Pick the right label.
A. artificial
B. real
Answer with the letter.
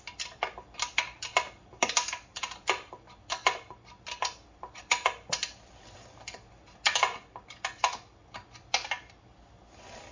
B